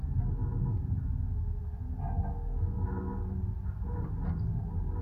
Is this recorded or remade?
recorded